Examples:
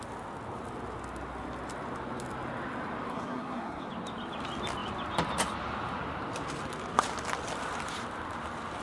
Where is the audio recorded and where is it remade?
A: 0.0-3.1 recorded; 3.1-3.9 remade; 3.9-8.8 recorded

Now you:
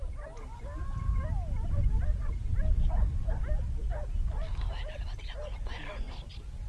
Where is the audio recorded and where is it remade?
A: 0.0-6.7 recorded